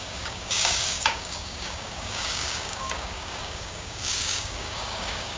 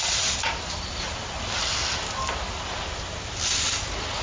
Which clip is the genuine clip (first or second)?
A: second